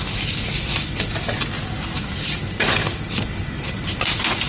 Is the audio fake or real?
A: real